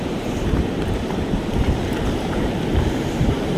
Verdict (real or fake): fake